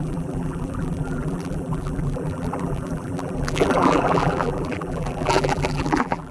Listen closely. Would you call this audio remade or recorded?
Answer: remade